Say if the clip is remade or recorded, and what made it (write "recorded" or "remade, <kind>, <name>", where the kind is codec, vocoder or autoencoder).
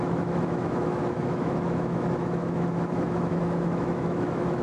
remade, autoencoder, DAC-VAE